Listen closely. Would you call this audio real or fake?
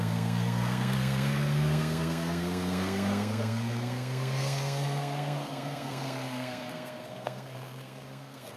fake